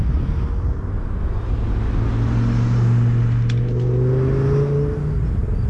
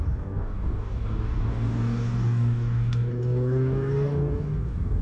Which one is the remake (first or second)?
second